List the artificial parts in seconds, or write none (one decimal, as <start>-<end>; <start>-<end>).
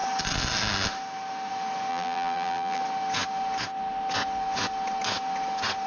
1.9-2.8